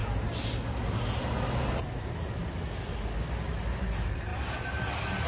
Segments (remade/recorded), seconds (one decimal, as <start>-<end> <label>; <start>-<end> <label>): 0.0-5.3 recorded